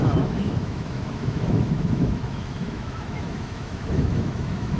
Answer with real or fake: fake